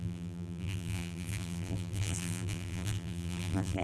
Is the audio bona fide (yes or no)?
no